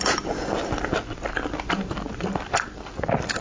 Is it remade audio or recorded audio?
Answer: recorded